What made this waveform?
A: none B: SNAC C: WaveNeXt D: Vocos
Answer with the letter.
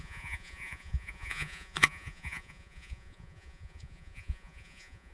D